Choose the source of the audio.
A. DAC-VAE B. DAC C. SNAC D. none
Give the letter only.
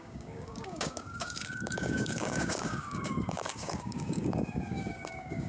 B